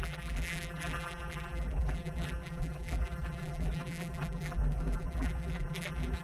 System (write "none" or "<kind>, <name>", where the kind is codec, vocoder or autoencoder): vocoder, BigVGAN v2